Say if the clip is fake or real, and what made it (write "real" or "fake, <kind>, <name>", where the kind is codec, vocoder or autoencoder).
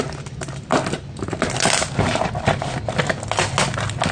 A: real